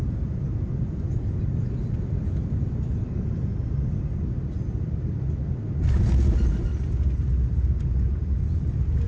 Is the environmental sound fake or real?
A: real